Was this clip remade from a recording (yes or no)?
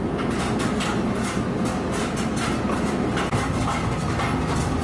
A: no